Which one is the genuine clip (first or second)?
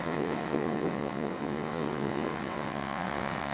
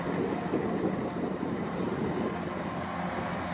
second